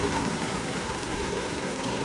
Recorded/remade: remade